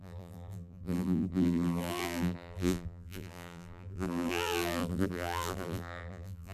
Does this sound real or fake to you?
fake